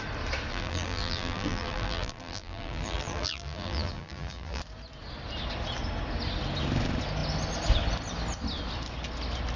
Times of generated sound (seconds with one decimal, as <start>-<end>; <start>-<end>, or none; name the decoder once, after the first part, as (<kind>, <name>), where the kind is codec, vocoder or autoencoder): 0.5-4.6 (vocoder, BigVGAN v2)

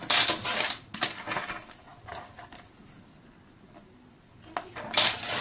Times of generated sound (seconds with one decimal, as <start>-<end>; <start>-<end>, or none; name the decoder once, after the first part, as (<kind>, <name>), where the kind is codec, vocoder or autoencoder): none